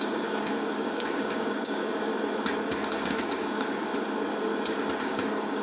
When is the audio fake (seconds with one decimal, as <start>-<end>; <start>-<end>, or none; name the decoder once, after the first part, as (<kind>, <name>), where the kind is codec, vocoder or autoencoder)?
0.0-2.1 (codec, DAC); 2.7-3.9; 5.0-5.6